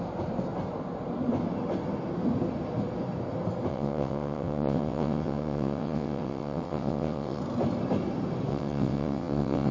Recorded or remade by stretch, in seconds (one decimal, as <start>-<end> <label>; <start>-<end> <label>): 0.0-3.7 recorded; 3.7-7.4 remade; 7.4-8.5 recorded; 8.5-9.7 remade

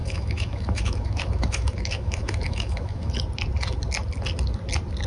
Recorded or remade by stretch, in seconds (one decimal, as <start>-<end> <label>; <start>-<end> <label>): 0.0-3.1 remade; 3.1-5.1 recorded

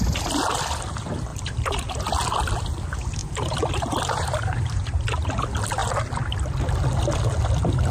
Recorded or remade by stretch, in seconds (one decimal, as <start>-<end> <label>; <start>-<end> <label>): 0.0-1.3 recorded; 1.3-1.9 remade; 1.9-3.2 recorded; 3.2-5.1 remade; 5.1-7.9 recorded

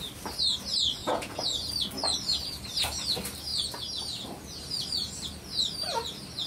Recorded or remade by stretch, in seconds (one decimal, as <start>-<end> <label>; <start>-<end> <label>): 0.0-1.0 recorded; 1.0-1.7 remade; 1.7-6.5 recorded

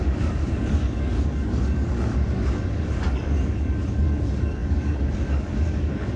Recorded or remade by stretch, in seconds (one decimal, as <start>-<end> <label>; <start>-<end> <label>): 0.0-6.2 remade

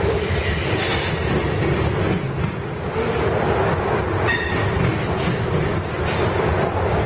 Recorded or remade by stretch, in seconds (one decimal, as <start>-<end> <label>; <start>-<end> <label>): 0.0-0.9 remade; 0.9-4.5 recorded; 4.5-7.1 remade

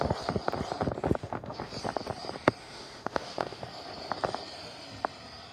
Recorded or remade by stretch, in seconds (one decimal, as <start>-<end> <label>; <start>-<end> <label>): 0.0-1.2 recorded; 1.2-1.7 remade; 1.7-2.6 recorded; 2.6-3.6 remade; 3.6-5.5 recorded

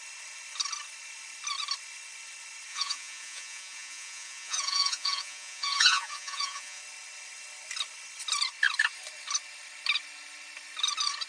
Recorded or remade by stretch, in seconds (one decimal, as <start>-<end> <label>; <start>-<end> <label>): 0.0-2.7 recorded; 2.7-6.8 remade; 6.8-11.3 recorded